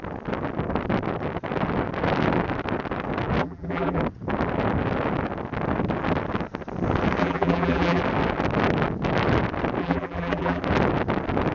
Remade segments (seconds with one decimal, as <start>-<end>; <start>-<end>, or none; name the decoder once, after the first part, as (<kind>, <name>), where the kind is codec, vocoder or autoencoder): 3.4-4.0 (vocoder, BigVGAN v2); 7.2-8.0; 9.8-10.6